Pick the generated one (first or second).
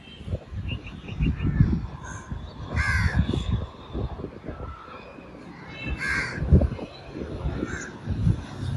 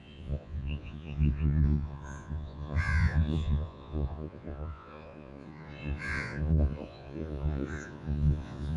second